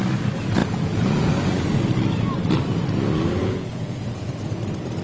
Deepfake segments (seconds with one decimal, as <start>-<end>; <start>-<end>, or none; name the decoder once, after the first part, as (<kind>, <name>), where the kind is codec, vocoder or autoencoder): 0.6-1.3 (vocoder, Vocos); 3.4-4.6